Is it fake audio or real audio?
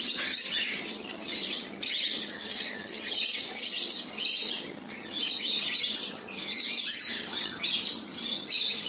fake